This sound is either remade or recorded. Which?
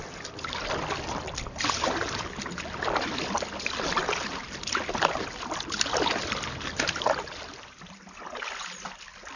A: recorded